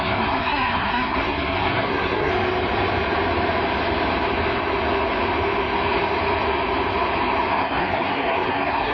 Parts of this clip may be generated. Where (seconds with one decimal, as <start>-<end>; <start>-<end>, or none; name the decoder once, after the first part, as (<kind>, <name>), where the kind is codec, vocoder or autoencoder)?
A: 0.0-2.3 (codec, SNAC); 7.5-8.9